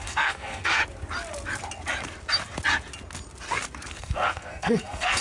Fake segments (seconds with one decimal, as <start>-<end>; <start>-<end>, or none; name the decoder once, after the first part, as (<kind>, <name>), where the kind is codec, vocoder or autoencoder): 0.0-0.8 (codec, SNAC); 3.9-5.2